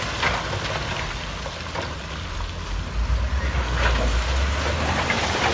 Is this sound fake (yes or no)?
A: no